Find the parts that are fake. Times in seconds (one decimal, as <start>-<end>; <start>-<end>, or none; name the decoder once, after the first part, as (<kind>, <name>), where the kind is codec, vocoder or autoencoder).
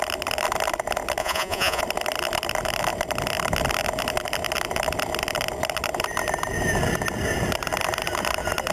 1.2-1.8 (vocoder, Vocos)